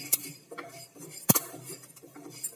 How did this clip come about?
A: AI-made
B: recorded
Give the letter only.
A